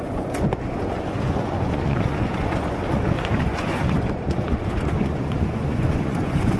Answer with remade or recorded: remade